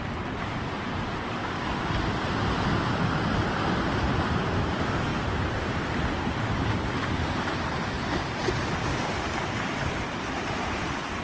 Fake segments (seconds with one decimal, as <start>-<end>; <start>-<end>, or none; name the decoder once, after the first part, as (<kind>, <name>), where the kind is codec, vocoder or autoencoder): 1.4-1.9 (codec, DAC)